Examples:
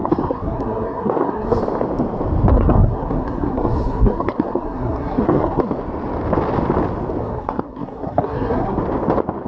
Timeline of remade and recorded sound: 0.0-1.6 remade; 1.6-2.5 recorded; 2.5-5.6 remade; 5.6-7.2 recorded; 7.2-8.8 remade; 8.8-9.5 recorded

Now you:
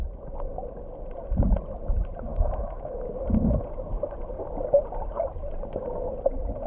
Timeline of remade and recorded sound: 0.0-2.3 recorded; 2.3-3.0 remade; 3.0-6.7 recorded

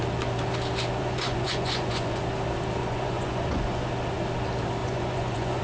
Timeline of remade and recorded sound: 0.0-1.0 recorded; 1.0-2.2 remade; 2.2-2.8 recorded; 2.8-3.9 remade; 3.9-4.8 recorded; 4.8-5.6 remade

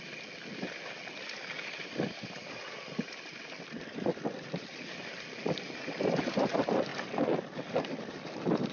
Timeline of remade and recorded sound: 0.0-8.7 recorded

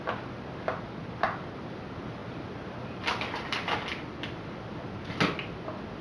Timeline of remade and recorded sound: 0.0-6.0 recorded

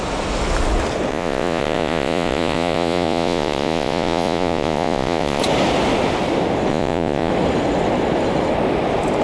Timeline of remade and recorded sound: 0.0-1.1 recorded; 1.1-5.4 remade; 5.4-6.7 recorded; 6.7-7.3 remade; 7.3-9.2 recorded

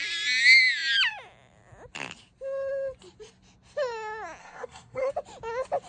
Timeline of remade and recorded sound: 0.0-4.4 recorded; 4.4-5.1 remade; 5.1-5.9 recorded